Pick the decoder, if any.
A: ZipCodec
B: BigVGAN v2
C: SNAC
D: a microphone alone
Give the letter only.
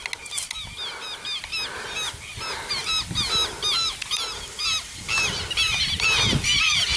D